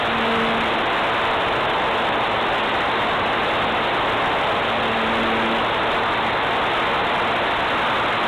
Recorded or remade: recorded